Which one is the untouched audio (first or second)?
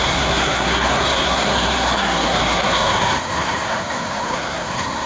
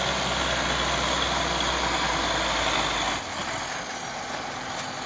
second